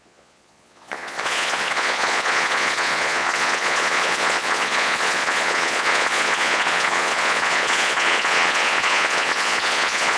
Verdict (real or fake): fake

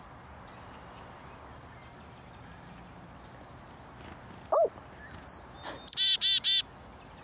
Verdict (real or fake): real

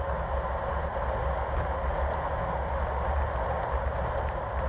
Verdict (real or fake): real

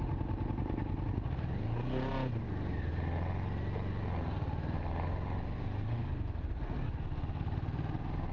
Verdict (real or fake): real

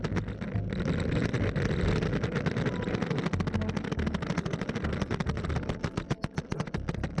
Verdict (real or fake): real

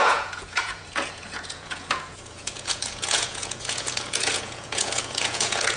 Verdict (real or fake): fake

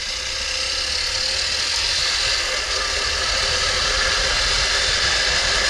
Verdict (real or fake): real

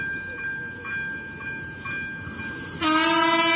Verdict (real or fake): real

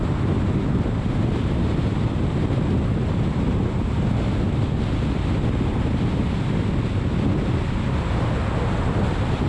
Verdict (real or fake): real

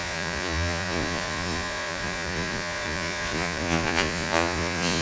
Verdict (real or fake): fake